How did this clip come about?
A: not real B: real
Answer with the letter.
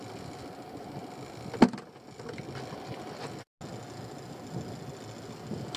B